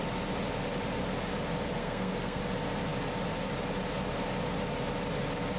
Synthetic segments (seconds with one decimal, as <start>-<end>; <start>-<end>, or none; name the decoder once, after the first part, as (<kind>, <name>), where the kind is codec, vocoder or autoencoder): 1.8-2.4 (codec, SNAC)